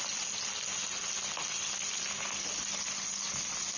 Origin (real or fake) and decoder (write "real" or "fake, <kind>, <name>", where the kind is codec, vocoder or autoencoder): real